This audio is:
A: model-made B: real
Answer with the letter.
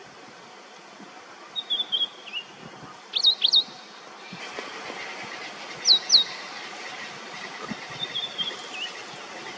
B